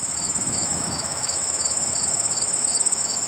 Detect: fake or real fake